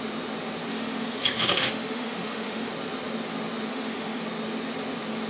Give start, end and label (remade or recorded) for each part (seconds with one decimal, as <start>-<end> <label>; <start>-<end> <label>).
0.0-0.7 recorded; 0.7-2.7 remade; 2.7-3.7 recorded; 3.7-4.2 remade; 4.2-5.3 recorded